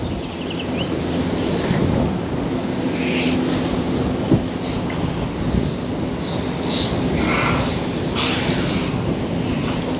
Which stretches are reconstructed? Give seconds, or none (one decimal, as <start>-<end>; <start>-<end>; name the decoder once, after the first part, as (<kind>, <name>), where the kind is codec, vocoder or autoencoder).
none